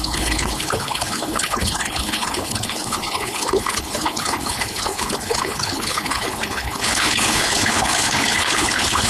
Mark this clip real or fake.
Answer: fake